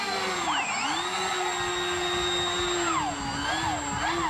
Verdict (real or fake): real